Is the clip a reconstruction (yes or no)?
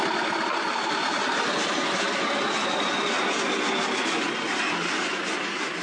no